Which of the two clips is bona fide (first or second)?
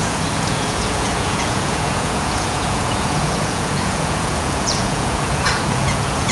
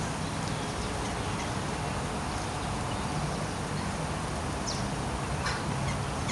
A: second